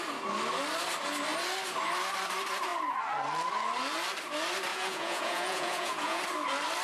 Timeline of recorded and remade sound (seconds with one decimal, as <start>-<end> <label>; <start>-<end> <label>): 0.0-4.7 recorded; 4.7-6.2 remade; 6.2-6.8 recorded